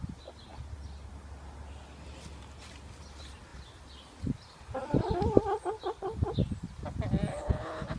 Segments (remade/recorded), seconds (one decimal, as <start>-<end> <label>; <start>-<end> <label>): 0.0-7.3 recorded; 7.3-8.0 remade